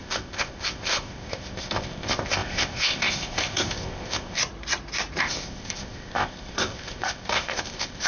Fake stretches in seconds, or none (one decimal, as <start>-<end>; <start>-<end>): 0.0-4.4; 5.2-8.1